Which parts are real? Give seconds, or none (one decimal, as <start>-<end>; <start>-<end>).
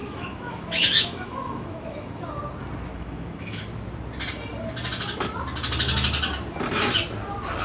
2.3-2.9; 3.6-7.6